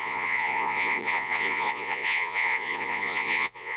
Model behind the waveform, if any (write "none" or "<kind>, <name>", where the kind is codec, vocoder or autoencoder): vocoder, Vocos